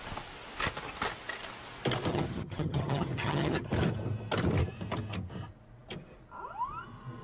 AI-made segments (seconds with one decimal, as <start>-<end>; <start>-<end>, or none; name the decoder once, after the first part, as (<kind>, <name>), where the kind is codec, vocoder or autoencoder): 2.1-3.7 (vocoder, HiFi-GAN)